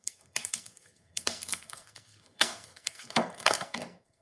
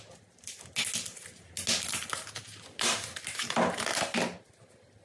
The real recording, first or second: second